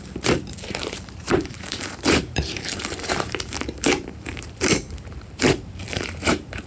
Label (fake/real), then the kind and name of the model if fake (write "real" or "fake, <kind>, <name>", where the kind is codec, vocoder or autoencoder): fake, vocoder, BigVGAN v2